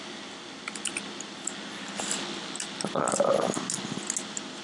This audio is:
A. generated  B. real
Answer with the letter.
B